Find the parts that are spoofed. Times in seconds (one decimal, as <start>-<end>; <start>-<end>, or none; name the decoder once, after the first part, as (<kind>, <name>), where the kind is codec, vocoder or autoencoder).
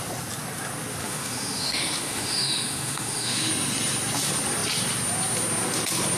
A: 1.0-3.5 (autoencoder, DAC-VAE)